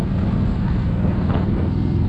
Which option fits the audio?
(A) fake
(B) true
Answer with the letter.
A